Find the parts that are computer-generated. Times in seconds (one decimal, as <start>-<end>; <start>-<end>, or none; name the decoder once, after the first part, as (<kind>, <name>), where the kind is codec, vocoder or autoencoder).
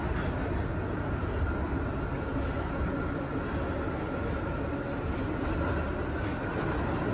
none